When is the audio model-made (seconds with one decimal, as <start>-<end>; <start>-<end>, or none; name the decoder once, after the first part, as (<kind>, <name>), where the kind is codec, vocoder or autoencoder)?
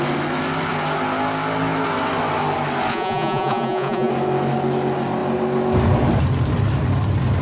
2.9-4.1 (vocoder, Vocos)